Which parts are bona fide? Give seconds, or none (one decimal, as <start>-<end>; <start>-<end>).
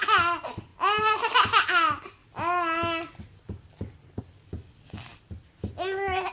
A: 0.0-6.3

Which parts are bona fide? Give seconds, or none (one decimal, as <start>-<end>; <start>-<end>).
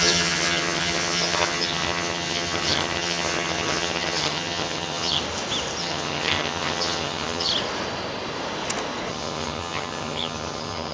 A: 5.2-5.8; 7.5-9.1